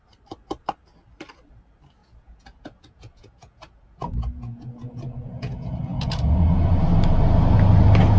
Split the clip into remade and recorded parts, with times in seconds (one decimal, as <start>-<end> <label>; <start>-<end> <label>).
0.0-2.0 recorded; 2.0-6.8 remade; 6.8-8.2 recorded